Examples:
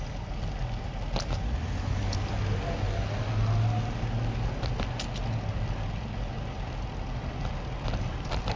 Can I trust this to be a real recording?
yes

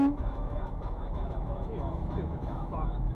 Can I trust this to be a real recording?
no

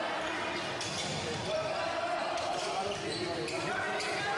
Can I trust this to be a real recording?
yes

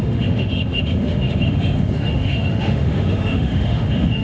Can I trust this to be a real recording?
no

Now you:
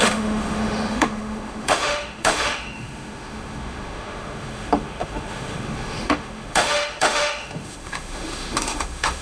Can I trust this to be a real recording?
no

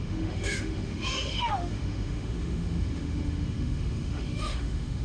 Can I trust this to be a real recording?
no